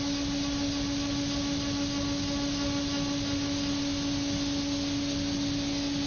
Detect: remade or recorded recorded